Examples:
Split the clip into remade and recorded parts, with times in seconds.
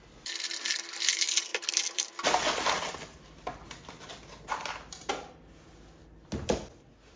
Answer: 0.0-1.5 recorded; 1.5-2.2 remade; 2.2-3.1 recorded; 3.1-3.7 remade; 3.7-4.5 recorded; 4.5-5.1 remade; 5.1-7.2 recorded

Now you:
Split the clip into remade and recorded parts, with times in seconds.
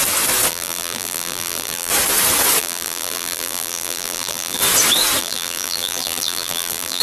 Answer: 0.0-0.5 recorded; 0.5-1.9 remade; 1.9-2.6 recorded; 2.6-4.6 remade; 4.6-5.2 recorded; 5.2-7.0 remade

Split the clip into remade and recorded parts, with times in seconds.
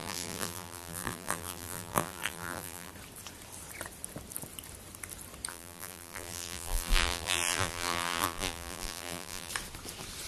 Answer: 0.0-2.9 remade; 2.9-5.5 recorded; 5.5-9.5 remade; 9.5-10.3 recorded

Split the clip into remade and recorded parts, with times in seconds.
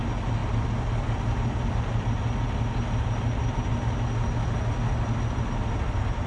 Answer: 0.0-6.3 recorded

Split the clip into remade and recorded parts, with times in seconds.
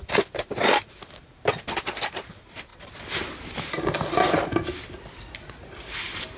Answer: 0.0-6.4 recorded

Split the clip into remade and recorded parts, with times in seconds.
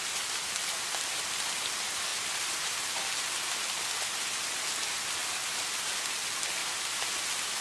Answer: 0.0-2.1 recorded; 2.1-3.1 remade; 3.1-5.2 recorded; 5.2-6.0 remade; 6.0-6.6 recorded; 6.6-7.1 remade; 7.1-7.6 recorded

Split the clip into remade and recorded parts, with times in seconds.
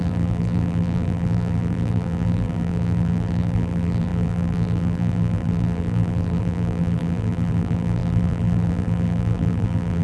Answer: 0.0-10.0 remade